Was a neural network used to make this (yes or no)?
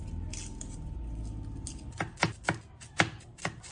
no